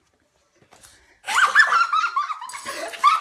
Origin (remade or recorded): recorded